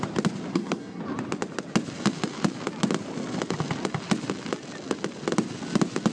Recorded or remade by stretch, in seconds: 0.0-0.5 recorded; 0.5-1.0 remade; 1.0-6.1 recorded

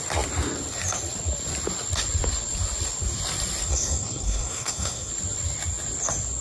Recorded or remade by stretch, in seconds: 0.0-3.7 recorded; 3.7-5.1 remade; 5.1-6.4 recorded

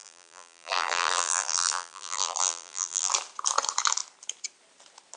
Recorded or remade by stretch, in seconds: 0.0-3.1 remade; 3.1-5.2 recorded

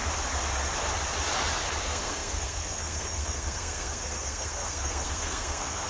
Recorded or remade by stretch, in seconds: 0.0-1.8 recorded; 1.8-5.9 remade

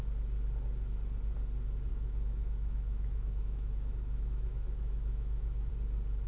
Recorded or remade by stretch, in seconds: 0.0-1.9 recorded; 1.9-5.7 remade; 5.7-6.3 recorded

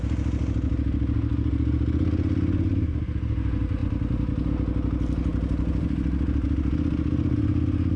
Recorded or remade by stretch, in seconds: 0.0-8.0 recorded

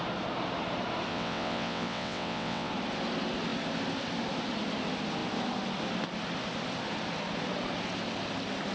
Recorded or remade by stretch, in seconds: 0.0-1.1 recorded; 1.1-2.7 remade; 2.7-8.7 recorded

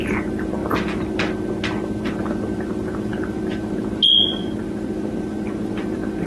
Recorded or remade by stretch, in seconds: 0.0-6.3 recorded